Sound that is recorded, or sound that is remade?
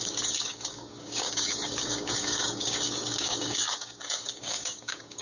remade